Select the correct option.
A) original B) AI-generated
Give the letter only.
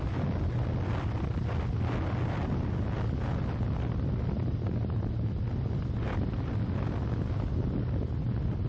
A